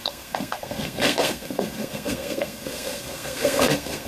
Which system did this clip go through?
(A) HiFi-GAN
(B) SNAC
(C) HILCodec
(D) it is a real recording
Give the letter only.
B